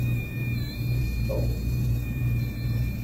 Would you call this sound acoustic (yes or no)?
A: no